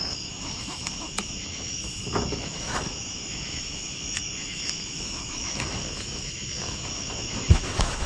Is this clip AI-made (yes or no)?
yes